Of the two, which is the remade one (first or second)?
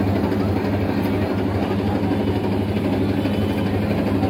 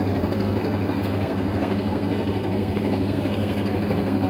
second